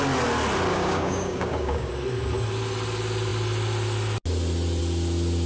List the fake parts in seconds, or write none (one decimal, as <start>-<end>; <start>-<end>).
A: 0.7-1.9